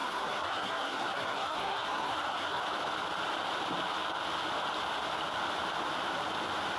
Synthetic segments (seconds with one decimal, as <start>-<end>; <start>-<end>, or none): 0.0-2.6